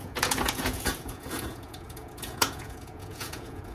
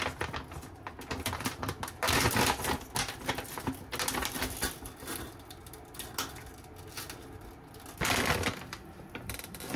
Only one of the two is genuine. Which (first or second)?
second